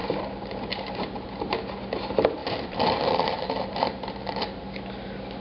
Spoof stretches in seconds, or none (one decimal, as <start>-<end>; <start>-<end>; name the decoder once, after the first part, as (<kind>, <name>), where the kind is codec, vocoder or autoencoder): 2.4-4.6 (vocoder, BigVGAN v2)